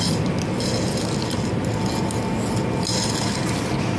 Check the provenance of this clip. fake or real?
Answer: real